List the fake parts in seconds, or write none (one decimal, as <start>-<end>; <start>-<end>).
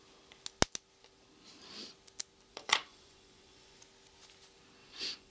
2.5-3.8; 4.8-5.3